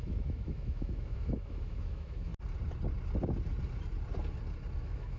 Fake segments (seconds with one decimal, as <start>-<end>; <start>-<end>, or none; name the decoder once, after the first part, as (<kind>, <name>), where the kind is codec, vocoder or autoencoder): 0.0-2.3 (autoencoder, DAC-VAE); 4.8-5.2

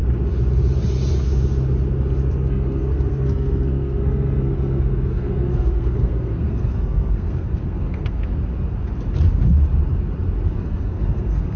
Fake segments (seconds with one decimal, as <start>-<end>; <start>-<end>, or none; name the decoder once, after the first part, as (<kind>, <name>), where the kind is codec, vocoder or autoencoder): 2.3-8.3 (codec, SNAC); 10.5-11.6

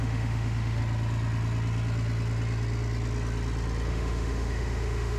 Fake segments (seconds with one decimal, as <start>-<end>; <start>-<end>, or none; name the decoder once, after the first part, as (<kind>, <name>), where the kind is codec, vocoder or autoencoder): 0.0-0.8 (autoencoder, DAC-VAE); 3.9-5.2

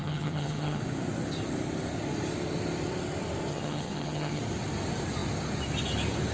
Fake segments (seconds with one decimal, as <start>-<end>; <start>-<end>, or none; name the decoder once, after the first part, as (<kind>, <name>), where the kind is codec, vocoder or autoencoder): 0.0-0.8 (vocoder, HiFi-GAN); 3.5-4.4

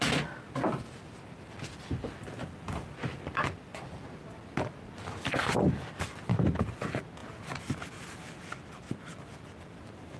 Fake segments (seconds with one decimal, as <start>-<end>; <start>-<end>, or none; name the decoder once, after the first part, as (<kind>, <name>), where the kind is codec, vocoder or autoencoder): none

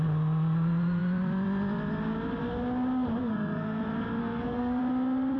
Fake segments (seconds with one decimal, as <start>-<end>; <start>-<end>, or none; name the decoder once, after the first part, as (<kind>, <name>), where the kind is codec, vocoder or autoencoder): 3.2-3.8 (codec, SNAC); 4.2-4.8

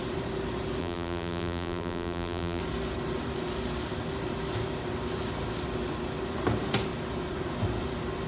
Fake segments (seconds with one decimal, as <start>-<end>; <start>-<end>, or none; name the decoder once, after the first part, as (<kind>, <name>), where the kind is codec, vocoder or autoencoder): 0.8-2.6 (vocoder, BigVGAN v2)

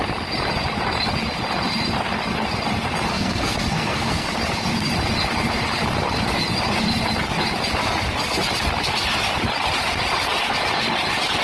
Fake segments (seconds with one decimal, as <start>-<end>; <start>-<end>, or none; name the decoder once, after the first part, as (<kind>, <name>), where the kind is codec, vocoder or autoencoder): 3.1-4.3 (codec, SNAC)